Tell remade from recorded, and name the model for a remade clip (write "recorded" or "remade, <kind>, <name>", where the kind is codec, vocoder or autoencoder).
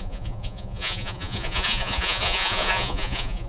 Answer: remade, vocoder, Vocos